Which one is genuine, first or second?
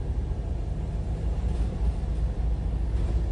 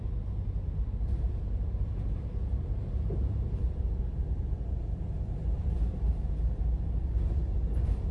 first